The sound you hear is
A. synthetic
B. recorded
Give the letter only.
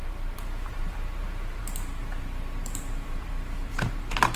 A